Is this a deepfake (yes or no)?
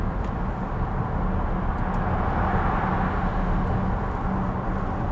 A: no